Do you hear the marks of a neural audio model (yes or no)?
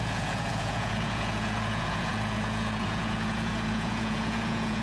yes